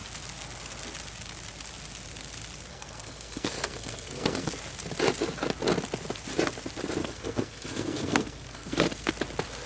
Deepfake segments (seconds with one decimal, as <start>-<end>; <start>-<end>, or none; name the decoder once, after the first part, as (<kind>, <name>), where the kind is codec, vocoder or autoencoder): 2.7-4.5 (codec, SNAC); 7.0-9.1